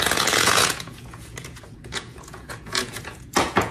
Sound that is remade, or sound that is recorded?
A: remade